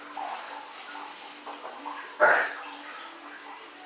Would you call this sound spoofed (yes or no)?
no